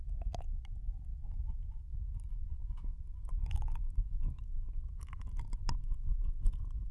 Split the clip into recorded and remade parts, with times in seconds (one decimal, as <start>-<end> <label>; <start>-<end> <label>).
0.0-6.9 recorded